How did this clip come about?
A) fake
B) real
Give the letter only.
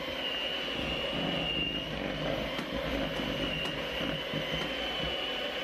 A